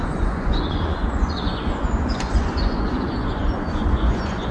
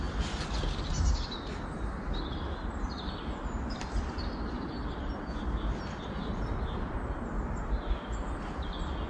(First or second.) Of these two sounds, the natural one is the second